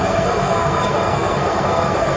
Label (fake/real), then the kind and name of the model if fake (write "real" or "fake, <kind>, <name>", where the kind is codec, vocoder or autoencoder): fake, codec, SNAC